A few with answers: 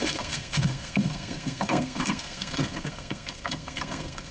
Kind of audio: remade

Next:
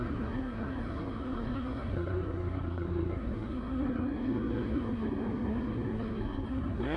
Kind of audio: remade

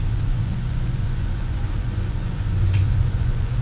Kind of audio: remade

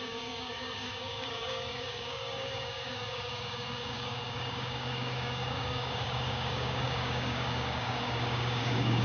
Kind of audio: remade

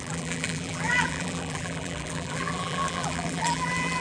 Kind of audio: remade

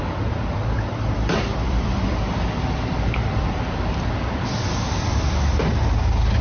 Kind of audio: remade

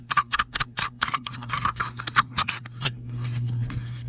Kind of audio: remade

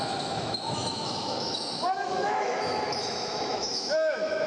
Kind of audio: remade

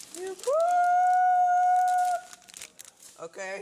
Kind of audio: recorded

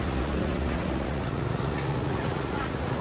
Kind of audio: remade